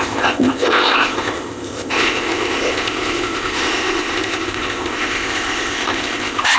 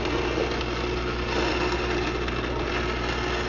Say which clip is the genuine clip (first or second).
second